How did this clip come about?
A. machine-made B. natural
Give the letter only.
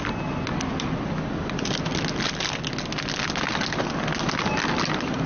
B